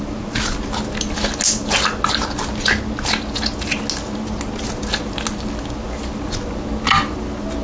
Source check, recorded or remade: recorded